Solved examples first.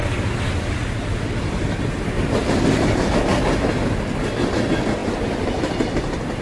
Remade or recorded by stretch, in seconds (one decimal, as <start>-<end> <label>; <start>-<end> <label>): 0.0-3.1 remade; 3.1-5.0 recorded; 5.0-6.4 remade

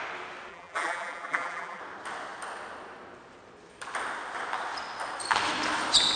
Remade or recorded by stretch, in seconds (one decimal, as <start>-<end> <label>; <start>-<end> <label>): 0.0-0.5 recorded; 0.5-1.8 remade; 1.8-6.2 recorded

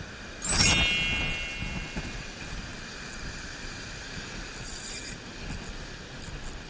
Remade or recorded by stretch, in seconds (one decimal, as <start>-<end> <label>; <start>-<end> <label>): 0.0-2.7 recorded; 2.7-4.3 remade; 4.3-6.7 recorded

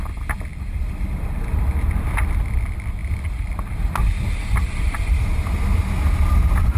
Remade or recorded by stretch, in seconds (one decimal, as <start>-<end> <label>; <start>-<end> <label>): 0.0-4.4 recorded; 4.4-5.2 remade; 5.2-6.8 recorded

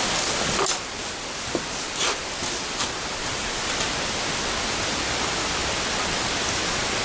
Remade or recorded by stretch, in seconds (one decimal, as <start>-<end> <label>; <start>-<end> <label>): 0.0-7.0 recorded

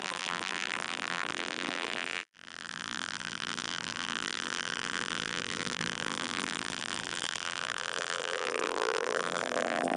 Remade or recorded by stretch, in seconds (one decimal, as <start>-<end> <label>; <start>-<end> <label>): 0.0-10.0 remade